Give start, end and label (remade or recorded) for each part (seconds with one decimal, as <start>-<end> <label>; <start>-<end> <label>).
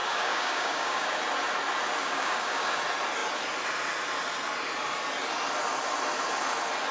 0.0-1.2 remade; 1.2-2.0 recorded; 2.0-2.8 remade; 2.8-6.9 recorded